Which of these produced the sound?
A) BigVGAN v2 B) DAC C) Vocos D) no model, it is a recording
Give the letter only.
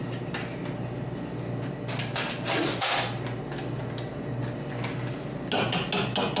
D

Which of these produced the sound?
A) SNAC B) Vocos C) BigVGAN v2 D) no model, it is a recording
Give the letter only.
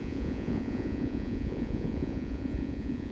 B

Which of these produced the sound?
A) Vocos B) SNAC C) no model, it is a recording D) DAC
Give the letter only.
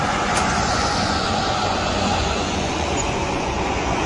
A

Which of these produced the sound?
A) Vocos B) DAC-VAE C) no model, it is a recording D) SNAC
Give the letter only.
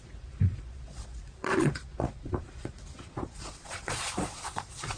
A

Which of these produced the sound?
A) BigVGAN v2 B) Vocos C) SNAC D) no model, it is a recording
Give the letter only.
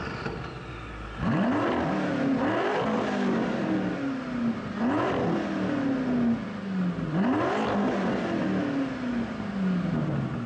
D